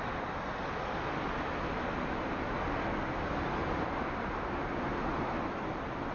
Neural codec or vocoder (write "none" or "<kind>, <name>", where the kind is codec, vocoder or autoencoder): none